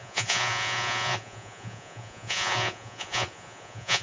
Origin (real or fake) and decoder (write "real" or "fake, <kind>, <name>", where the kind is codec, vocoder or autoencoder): fake, vocoder, Vocos